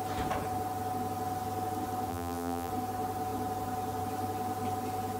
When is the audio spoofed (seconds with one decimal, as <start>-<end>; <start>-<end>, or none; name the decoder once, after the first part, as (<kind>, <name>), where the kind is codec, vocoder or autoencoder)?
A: 2.1-2.7 (vocoder, BigVGAN v2)